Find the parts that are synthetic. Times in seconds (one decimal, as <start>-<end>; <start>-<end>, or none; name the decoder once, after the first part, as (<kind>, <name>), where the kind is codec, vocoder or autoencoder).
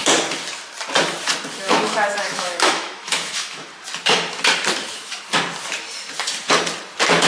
1.6-3.7 (autoencoder, DAC-VAE)